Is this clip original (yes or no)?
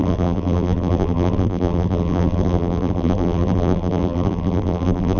no